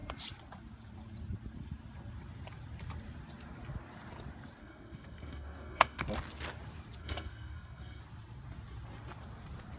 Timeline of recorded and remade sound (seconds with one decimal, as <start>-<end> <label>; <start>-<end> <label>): 0.0-4.6 recorded; 4.6-6.0 remade; 6.0-7.0 recorded; 7.0-8.0 remade; 8.0-9.8 recorded